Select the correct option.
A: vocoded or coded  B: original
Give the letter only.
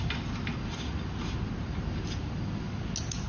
B